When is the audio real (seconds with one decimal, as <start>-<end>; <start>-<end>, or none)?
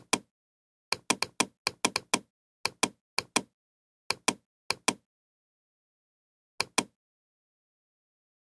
0.0-8.5